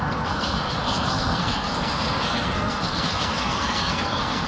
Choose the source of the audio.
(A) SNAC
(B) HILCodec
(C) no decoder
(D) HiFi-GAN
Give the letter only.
A